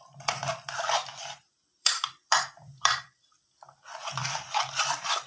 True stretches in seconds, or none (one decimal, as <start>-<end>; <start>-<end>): 0.0-1.1; 3.4-4.2